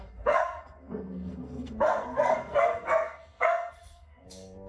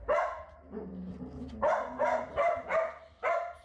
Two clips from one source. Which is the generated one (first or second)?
first